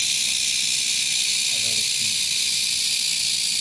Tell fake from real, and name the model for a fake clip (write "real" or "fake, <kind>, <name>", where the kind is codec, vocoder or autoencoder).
real